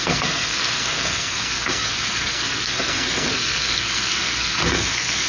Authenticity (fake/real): fake